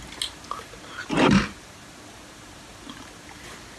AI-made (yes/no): no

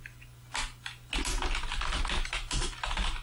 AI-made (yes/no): no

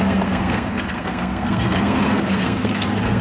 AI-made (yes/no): yes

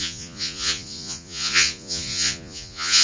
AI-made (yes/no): yes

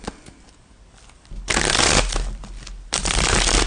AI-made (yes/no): no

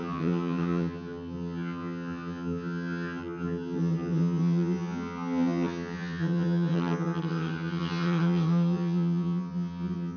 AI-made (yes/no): yes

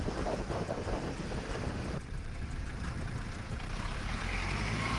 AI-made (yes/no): yes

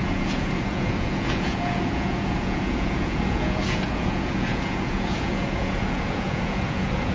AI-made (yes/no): yes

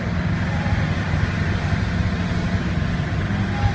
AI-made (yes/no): no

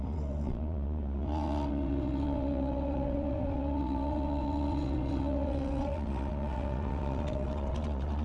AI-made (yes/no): yes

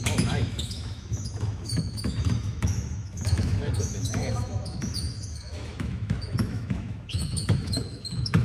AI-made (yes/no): yes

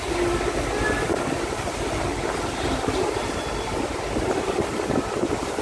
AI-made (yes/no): no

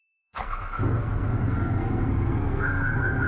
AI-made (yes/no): yes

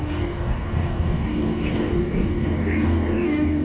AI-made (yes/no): yes